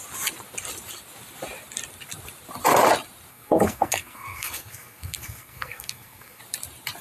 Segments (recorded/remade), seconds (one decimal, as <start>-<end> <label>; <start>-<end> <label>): 0.0-3.3 recorded; 3.3-6.4 remade; 6.4-7.0 recorded